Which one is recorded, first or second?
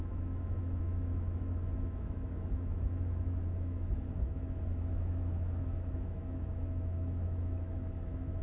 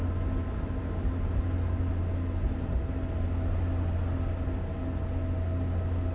second